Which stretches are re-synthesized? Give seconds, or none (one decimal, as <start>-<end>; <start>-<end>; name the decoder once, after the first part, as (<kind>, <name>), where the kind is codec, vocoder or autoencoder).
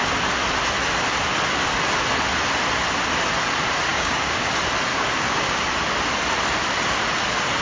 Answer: 3.9-4.5 (codec, DAC); 4.9-5.7